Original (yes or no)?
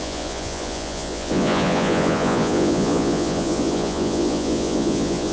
no